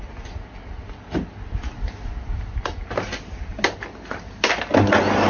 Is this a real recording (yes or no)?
yes